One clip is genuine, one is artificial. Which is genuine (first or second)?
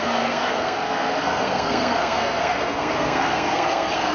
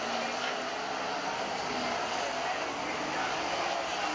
second